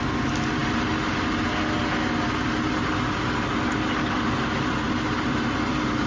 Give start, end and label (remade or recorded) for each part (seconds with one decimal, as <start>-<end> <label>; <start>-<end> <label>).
0.0-6.1 recorded